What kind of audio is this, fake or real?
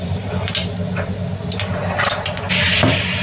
real